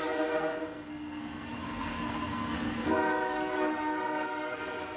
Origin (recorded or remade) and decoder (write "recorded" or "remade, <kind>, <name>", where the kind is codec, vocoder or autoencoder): remade, codec, SNAC